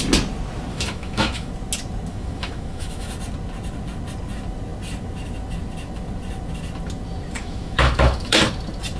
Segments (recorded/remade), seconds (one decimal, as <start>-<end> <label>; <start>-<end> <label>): 0.0-0.7 recorded; 0.7-1.5 remade; 1.5-2.1 recorded; 2.1-3.1 remade; 3.1-7.4 recorded; 7.4-8.4 remade; 8.4-9.0 recorded